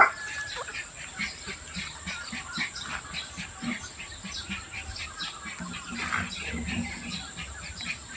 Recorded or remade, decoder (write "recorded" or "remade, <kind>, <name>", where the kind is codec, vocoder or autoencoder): recorded